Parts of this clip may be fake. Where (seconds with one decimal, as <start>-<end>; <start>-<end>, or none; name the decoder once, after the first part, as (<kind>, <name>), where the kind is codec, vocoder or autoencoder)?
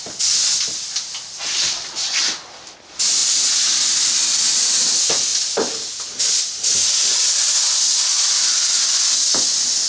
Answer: none